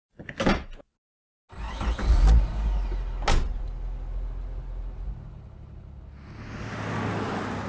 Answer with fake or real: real